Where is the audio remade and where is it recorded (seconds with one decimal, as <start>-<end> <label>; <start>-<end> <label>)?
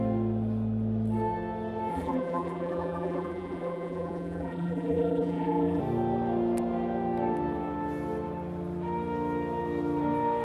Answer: 0.0-1.9 recorded; 1.9-5.8 remade; 5.8-10.4 recorded